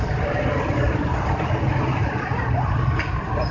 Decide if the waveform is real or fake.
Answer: real